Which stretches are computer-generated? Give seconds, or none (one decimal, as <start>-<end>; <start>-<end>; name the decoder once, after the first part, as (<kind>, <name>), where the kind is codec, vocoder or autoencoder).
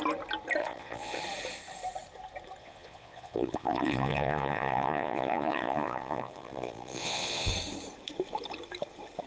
0.6-1.2 (vocoder, Vocos); 2.6-7.5